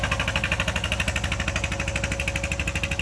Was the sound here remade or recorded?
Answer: recorded